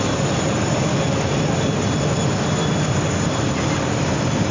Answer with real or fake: fake